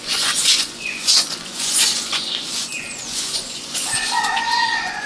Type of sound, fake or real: fake